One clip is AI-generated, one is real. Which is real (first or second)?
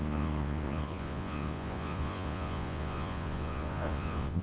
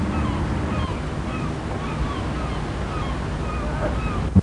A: second